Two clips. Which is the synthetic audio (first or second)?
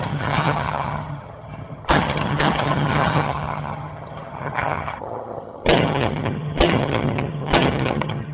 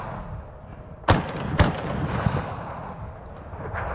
first